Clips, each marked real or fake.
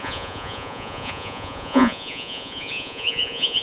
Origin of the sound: fake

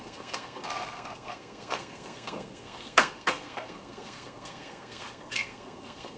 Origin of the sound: fake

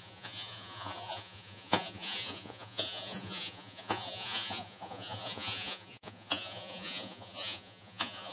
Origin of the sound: fake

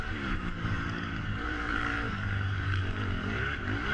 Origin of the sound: fake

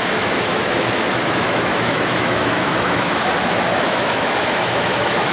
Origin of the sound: fake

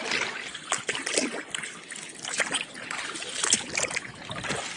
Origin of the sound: real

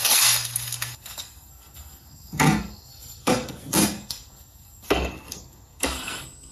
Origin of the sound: fake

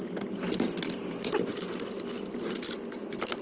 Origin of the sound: real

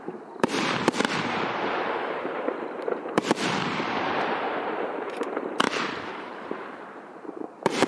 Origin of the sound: fake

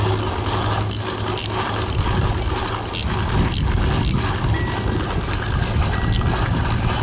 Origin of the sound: real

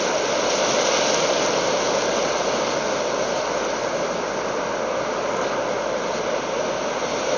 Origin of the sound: real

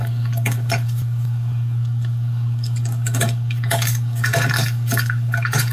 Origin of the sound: fake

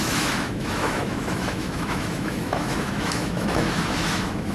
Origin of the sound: fake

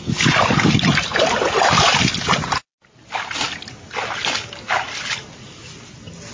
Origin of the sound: real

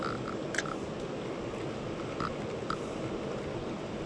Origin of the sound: real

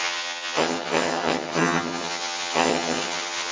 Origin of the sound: fake